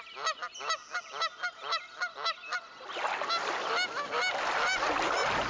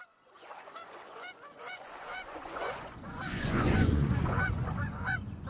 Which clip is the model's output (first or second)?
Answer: second